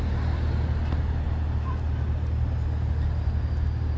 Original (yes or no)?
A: yes